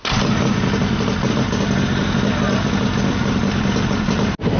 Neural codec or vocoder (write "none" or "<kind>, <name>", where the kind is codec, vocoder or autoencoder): none